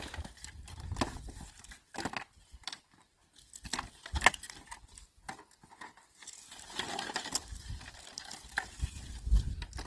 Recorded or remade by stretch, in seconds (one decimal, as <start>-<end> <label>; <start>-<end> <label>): 0.0-9.9 recorded